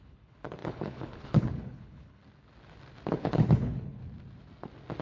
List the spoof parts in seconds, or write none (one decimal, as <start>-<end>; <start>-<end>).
0.0-2.2; 3.1-4.0